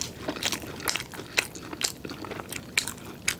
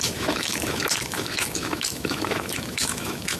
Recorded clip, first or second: first